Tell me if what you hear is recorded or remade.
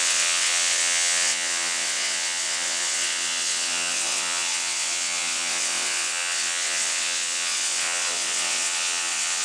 remade